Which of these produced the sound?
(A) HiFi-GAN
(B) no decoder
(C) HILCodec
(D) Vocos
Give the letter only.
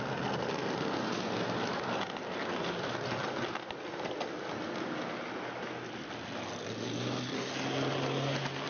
B